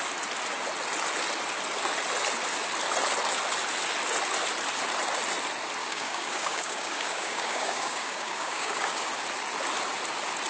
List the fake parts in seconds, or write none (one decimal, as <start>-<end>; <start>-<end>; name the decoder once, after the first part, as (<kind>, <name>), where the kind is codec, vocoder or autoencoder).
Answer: 5.8-9.1 (codec, DAC)